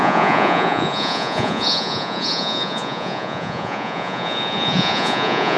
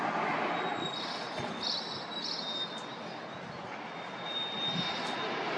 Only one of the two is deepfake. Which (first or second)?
first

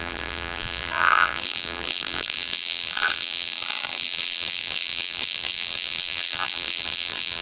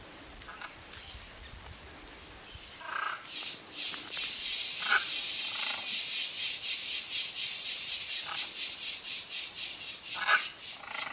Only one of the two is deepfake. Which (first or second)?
first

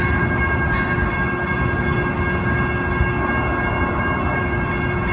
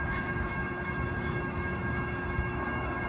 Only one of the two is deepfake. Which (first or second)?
second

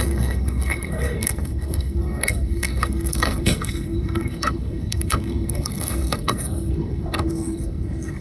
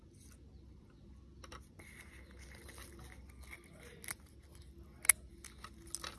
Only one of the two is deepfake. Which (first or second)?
first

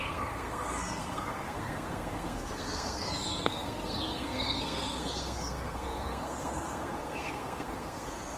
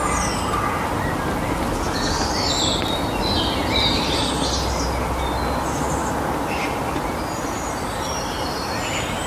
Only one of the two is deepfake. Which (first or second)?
first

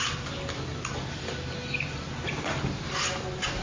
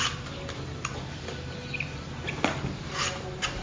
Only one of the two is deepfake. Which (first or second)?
second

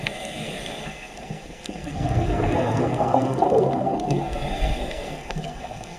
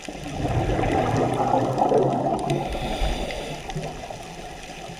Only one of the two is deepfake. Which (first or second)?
first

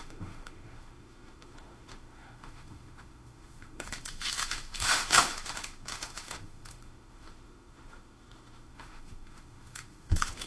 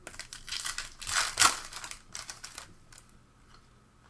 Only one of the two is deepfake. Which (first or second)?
first